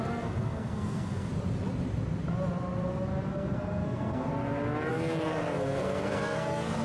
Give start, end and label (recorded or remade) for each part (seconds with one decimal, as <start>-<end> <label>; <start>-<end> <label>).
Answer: 0.0-1.3 remade; 1.3-3.3 recorded; 3.3-4.3 remade; 4.3-4.9 recorded; 4.9-6.8 remade